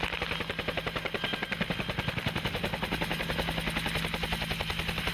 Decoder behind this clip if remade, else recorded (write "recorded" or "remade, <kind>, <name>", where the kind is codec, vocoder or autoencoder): recorded